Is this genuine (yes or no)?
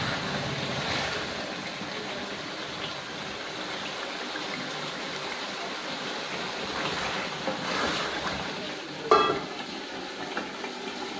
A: yes